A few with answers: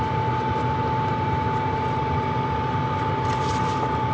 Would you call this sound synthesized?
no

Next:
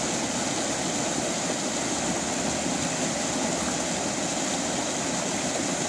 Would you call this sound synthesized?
no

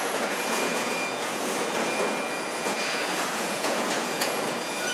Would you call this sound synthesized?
yes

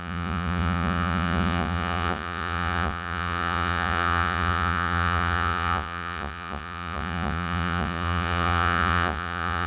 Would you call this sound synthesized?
yes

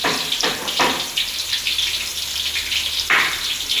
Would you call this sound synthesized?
no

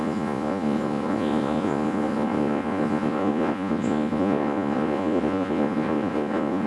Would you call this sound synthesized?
yes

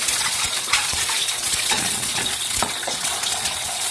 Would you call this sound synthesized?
yes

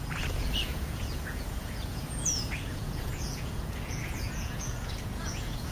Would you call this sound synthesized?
yes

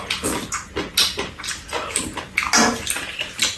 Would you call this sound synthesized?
no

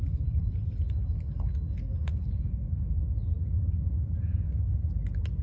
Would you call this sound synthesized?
no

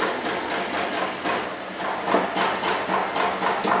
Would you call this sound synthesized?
no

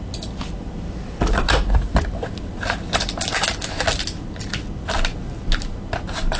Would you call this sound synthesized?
no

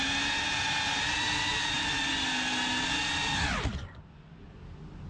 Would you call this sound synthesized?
no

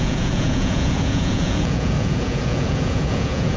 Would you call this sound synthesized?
yes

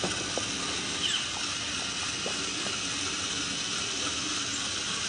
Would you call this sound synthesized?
no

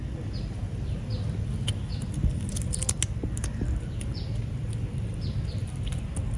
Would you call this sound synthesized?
no